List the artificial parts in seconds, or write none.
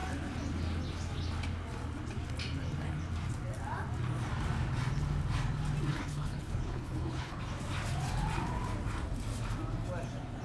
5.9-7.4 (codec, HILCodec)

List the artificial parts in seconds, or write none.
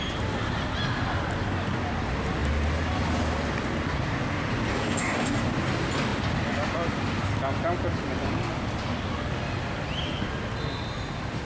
4.7-5.4 (codec, DAC)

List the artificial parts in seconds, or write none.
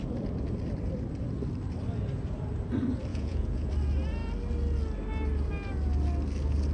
3.1-3.7 (vocoder, Vocos)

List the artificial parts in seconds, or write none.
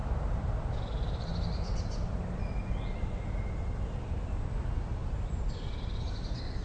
none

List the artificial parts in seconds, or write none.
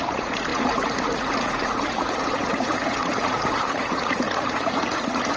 0.0-5.4 (vocoder, Vocos)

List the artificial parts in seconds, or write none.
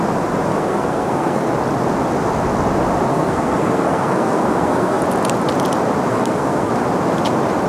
0.5-1.5 (codec, SNAC); 3.1-5.0; 6.1-6.7